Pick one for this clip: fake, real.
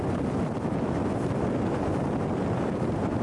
real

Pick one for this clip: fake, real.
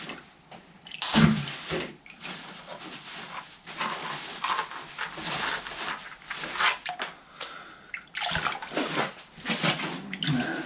real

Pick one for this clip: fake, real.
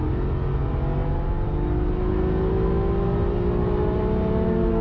real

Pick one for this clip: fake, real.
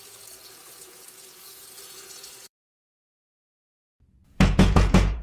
fake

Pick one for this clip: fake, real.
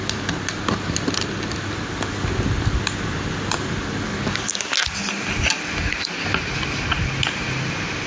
real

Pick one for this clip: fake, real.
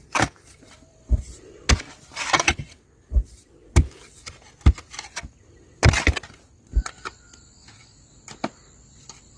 real